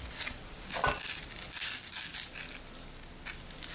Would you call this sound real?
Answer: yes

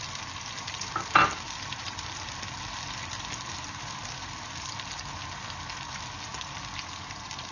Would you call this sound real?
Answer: yes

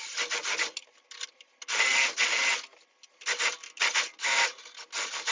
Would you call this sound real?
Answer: yes